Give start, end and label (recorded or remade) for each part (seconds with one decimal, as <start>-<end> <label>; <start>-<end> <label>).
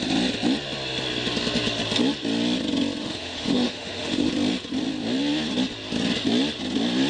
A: 0.0-3.0 recorded; 3.0-4.3 remade; 4.3-7.1 recorded